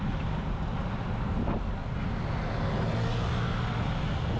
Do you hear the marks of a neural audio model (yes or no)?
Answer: no